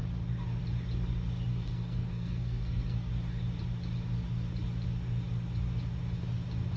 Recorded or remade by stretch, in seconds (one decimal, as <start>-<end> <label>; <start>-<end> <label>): 0.0-1.5 recorded; 1.5-3.1 remade; 3.1-6.8 recorded